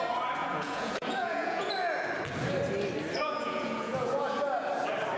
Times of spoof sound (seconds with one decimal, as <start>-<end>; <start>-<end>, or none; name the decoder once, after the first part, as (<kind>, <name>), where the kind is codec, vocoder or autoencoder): 0.4-1.7 (vocoder, Vocos); 3.2-4.3